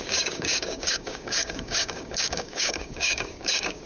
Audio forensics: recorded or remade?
remade